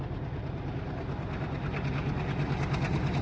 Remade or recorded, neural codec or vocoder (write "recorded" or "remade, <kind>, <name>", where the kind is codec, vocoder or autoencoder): recorded